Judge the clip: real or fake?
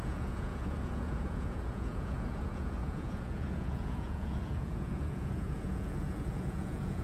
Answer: fake